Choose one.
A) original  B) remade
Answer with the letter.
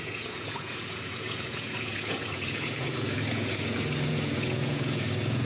B